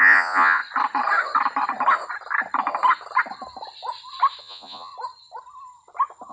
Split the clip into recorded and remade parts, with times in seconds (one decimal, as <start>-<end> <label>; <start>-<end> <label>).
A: 0.0-0.6 remade; 0.6-4.4 recorded; 4.4-4.9 remade; 4.9-6.3 recorded